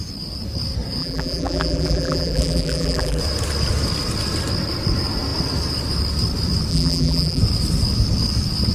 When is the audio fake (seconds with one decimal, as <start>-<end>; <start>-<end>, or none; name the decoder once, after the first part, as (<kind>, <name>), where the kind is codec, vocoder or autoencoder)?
1.0-3.2 (vocoder, BigVGAN v2); 6.7-7.4